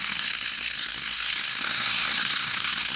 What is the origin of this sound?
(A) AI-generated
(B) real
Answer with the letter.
A